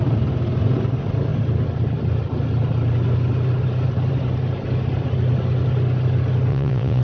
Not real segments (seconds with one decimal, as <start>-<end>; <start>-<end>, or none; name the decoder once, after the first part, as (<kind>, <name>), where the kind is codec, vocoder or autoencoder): 6.5-7.0 (vocoder, Vocos)